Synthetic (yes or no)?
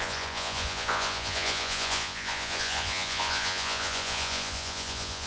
yes